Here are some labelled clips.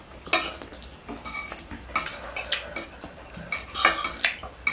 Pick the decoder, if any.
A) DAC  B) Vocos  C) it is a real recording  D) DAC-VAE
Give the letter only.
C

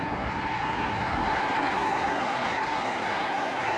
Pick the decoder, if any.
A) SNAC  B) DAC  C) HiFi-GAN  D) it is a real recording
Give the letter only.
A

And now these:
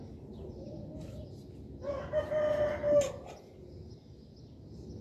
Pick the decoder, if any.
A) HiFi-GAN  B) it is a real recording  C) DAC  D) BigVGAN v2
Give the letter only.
B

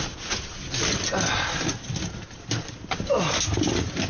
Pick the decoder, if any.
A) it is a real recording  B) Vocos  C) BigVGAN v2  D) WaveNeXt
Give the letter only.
A